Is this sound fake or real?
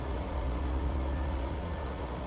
fake